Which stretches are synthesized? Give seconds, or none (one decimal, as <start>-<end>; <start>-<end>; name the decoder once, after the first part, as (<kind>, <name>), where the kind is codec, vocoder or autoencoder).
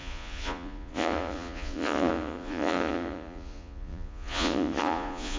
0.0-5.4 (vocoder, Vocos)